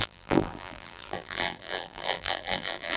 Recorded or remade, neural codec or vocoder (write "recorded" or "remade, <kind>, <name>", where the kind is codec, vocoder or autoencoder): remade, vocoder, BigVGAN v2